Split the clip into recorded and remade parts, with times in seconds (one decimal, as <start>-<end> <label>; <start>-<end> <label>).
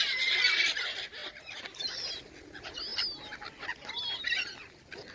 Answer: 0.0-5.1 recorded